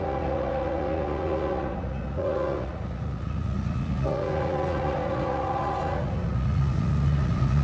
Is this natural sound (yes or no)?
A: no